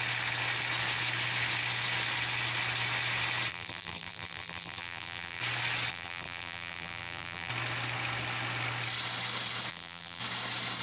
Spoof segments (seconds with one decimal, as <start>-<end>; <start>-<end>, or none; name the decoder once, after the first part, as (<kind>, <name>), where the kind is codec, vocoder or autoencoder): 3.5-5.4 (vocoder, BigVGAN v2); 5.9-7.5; 9.7-10.2